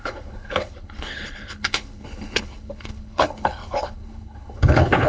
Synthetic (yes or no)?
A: yes